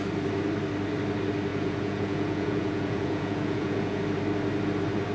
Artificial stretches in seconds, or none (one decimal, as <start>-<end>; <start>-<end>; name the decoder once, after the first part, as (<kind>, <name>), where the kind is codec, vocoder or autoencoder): 1.5-4.0 (vocoder, Vocos)